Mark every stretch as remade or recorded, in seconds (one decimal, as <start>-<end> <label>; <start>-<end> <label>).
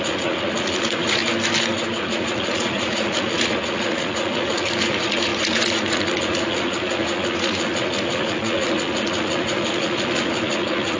0.0-1.2 remade; 1.2-2.0 recorded; 2.0-11.0 remade